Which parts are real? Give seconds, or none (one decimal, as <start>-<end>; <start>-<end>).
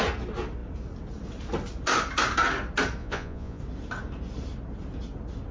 0.0-3.0; 3.6-5.5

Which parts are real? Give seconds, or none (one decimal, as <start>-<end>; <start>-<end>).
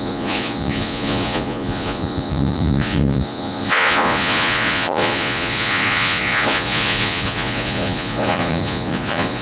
none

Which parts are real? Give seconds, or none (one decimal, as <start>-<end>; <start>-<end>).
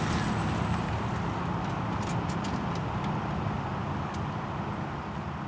0.0-5.5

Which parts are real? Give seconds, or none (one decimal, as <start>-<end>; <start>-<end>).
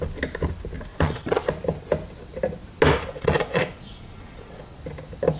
0.0-0.9; 1.5-3.1; 4.8-5.4